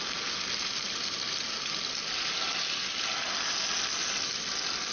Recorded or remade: recorded